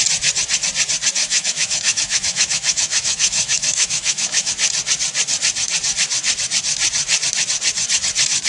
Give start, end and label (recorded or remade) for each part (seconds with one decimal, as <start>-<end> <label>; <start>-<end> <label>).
0.0-1.2 recorded; 1.2-4.5 remade; 4.5-8.5 recorded